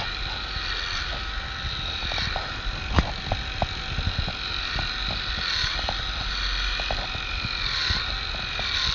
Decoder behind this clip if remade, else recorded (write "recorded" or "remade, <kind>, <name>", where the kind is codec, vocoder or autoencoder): recorded